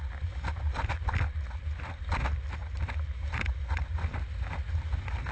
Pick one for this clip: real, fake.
real